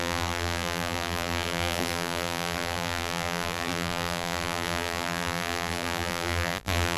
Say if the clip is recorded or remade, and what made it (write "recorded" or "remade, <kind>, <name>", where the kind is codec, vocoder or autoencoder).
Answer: remade, vocoder, BigVGAN v2